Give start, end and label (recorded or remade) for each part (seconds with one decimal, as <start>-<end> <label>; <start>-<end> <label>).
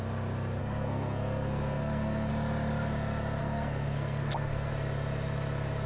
0.0-0.6 recorded; 0.6-2.3 remade; 2.3-3.4 recorded; 3.4-4.7 remade; 4.7-5.9 recorded